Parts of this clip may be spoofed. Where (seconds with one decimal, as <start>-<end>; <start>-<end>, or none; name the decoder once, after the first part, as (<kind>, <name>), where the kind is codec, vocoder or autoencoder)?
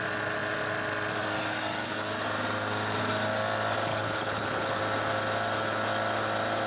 3.9-4.8 (codec, HILCodec)